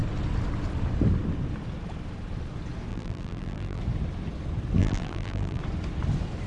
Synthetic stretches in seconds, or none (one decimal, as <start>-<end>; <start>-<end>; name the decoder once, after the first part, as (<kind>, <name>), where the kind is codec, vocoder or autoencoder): 2.9-3.8 (vocoder, BigVGAN v2); 4.8-5.6